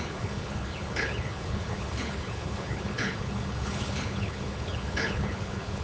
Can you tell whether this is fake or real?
fake